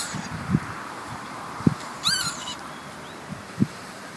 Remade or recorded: remade